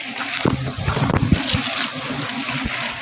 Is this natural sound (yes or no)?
yes